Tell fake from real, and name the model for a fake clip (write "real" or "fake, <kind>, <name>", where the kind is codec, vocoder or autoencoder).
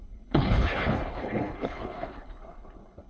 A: fake, codec, HILCodec